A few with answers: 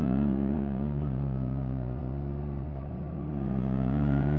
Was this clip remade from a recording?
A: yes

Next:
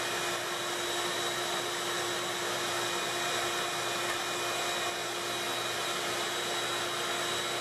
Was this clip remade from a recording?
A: no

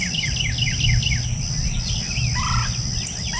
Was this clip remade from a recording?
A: no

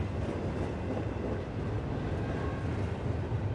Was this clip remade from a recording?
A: no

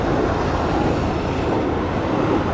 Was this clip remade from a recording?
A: no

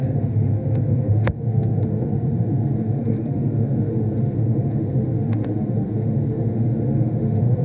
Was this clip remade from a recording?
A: yes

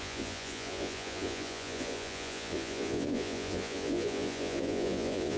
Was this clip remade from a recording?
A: yes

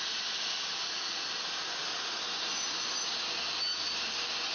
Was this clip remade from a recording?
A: no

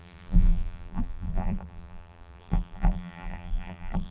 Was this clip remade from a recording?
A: yes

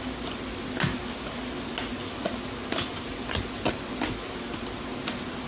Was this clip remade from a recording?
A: no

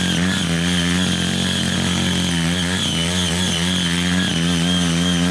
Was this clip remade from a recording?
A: no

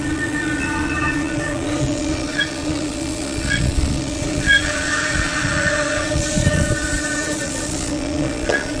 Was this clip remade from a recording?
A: yes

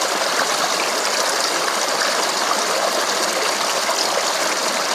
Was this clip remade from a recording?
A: no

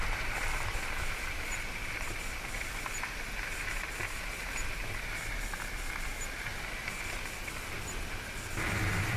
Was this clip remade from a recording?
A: no